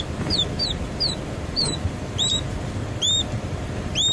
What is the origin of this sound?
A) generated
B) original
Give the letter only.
A